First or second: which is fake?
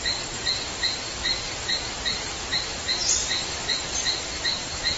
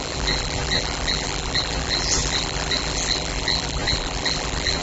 second